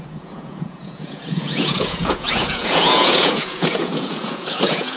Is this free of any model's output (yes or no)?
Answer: no